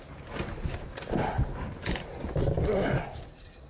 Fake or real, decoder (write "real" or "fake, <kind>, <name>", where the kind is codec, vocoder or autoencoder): real